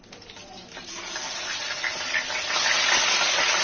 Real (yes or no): yes